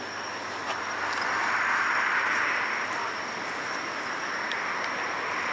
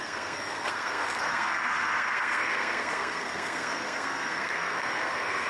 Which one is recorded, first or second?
first